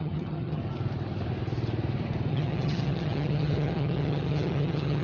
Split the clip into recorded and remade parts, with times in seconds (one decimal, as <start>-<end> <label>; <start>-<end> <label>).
0.0-0.6 remade; 0.6-2.3 recorded; 2.3-5.0 remade